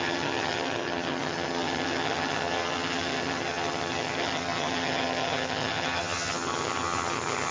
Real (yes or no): no